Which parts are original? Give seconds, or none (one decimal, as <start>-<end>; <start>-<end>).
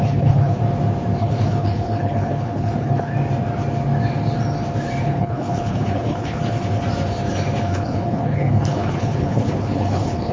0.6-1.2; 3.1-5.0; 6.4-7.6